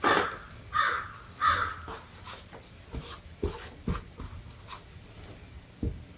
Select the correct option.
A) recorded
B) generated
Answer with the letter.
A